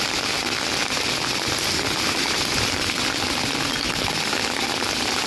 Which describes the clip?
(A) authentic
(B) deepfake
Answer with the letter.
A